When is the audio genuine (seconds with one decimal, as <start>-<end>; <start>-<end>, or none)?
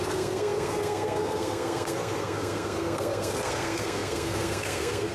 none